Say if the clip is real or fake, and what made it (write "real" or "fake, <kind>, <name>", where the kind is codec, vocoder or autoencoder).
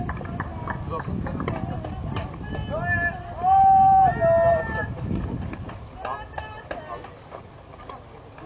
real